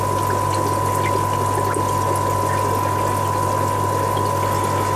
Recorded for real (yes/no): yes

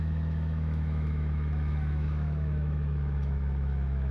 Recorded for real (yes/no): no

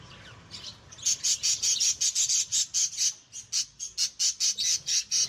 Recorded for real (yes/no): yes